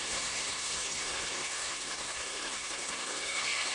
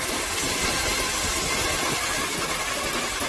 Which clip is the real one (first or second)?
second